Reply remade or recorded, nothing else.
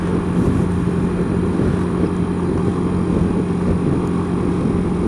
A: recorded